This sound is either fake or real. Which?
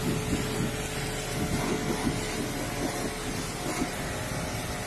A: real